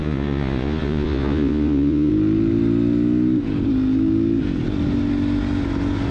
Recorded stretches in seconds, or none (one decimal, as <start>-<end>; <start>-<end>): 2.1-6.1